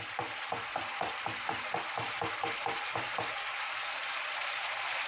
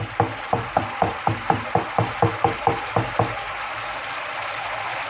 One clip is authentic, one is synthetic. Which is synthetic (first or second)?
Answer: first